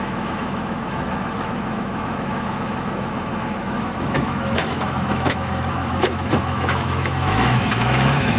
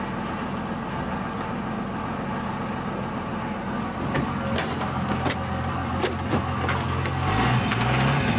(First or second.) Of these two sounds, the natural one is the second